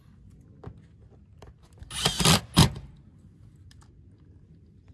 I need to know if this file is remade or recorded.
recorded